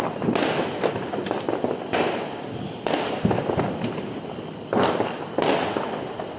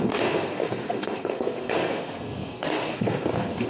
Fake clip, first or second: second